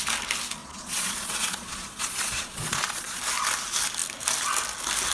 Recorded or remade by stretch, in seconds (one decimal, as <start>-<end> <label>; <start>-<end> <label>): 0.0-0.6 recorded; 0.6-3.2 remade; 3.2-5.1 recorded